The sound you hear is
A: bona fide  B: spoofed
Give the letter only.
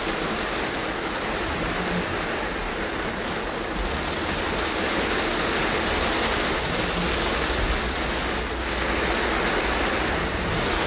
A